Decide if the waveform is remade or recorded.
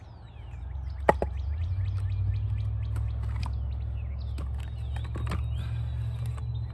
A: recorded